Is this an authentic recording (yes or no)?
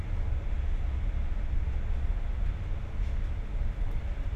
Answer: yes